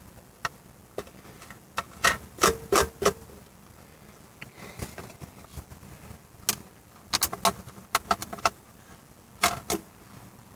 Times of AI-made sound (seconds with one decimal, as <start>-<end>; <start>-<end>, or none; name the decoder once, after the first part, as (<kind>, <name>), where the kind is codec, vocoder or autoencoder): 8.2-8.9 (vocoder, BigVGAN v2)